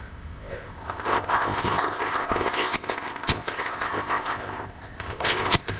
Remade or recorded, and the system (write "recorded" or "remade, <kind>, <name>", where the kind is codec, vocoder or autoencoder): remade, codec, ZipCodec